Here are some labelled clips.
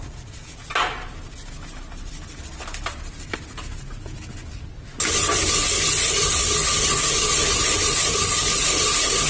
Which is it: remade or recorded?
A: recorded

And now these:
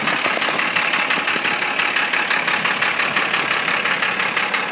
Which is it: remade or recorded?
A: recorded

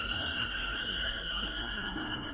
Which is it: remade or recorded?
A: remade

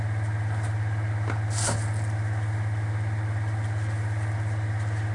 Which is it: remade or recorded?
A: recorded